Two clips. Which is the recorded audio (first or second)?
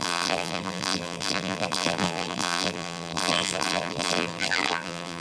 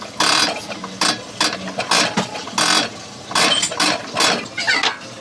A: second